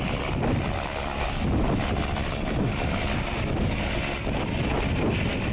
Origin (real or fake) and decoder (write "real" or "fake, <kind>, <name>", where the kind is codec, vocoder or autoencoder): real